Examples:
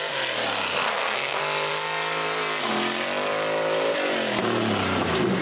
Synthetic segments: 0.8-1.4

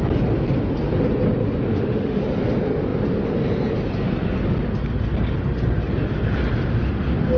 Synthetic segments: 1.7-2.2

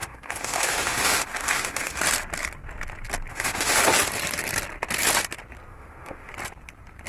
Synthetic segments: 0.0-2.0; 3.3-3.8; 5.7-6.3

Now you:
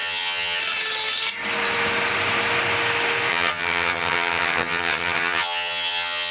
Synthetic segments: 0.0-0.6; 3.3-6.3

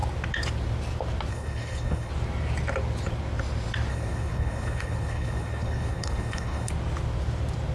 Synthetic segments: 1.3-2.1; 3.9-6.7

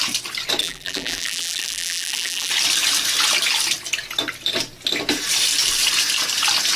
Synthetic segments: 0.6-2.5

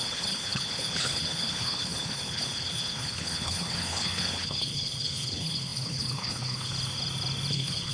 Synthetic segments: 0.0-6.7; 7.5-7.9